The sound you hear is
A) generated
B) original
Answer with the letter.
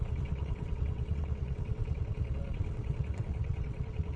A